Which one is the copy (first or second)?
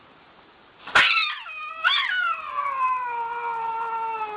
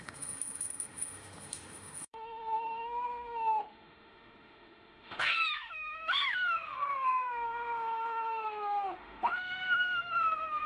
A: second